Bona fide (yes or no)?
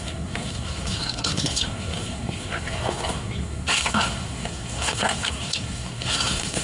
no